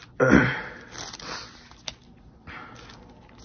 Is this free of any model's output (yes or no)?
yes